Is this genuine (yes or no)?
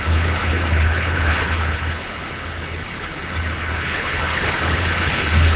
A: no